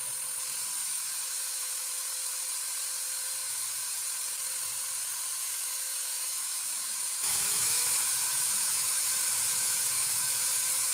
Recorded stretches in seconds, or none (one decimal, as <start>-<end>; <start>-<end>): 0.0-0.8; 1.7-3.4; 4.0-5.4